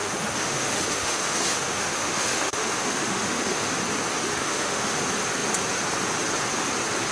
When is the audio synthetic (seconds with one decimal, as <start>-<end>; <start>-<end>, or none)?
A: 0.0-3.7; 4.3-5.0